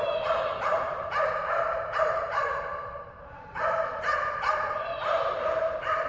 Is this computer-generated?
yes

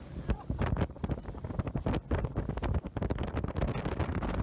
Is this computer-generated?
no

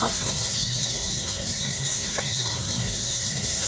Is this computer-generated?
yes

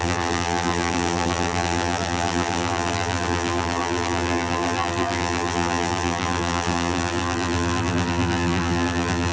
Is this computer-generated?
yes